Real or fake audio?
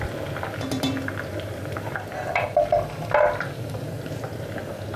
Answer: real